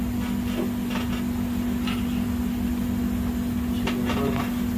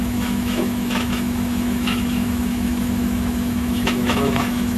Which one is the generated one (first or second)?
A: second